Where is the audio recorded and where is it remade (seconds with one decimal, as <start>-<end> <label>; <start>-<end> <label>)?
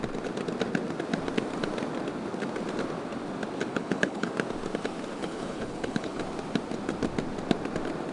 0.0-3.7 recorded; 3.7-4.3 remade; 4.3-5.2 recorded; 5.2-6.2 remade; 6.2-8.1 recorded